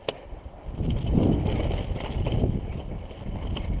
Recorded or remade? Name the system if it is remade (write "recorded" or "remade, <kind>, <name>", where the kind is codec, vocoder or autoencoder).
recorded